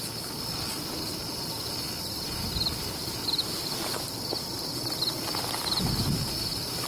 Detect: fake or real real